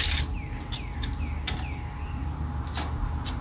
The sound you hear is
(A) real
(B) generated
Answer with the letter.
A